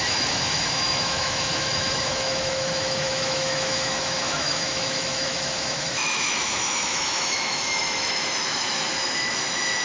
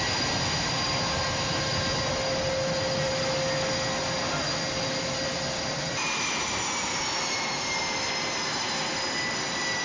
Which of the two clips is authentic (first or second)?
second